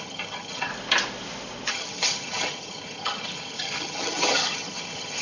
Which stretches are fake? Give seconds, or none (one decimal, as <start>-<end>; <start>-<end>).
0.0-0.7; 1.7-5.2